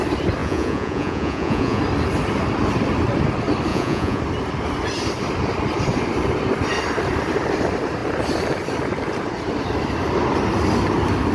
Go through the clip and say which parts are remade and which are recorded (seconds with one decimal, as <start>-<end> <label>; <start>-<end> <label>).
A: 0.0-0.4 recorded; 0.4-1.8 remade; 1.8-3.7 recorded; 3.7-4.2 remade; 4.2-11.3 recorded